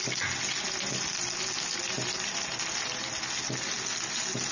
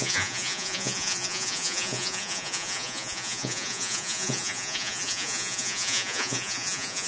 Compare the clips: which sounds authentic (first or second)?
first